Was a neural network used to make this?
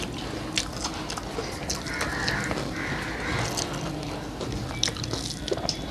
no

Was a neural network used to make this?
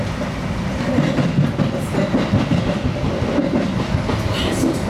no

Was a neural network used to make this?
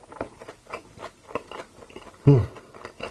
no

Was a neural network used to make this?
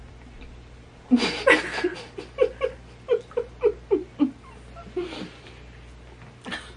no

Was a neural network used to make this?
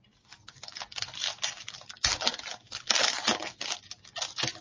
no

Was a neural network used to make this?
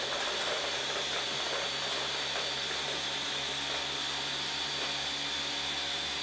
no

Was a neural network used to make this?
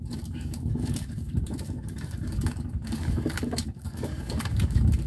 yes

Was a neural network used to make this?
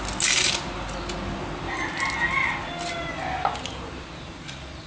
no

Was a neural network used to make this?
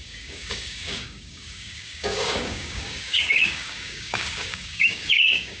yes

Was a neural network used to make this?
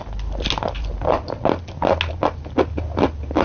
no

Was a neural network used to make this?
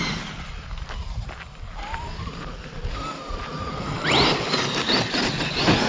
no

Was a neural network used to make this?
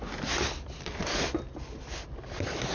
no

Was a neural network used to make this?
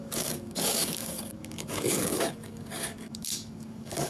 yes